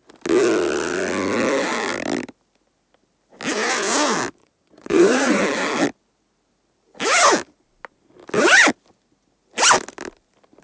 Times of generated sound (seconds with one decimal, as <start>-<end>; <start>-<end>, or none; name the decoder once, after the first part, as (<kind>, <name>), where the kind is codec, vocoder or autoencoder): 4.4-5.4 (vocoder, Vocos)